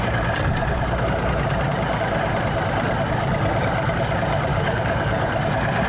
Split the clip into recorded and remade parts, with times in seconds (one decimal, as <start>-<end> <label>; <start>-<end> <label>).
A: 0.0-4.5 recorded; 4.5-5.4 remade; 5.4-5.9 recorded